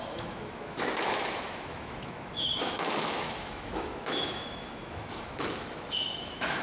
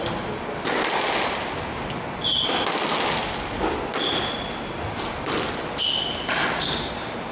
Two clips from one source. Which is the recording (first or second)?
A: second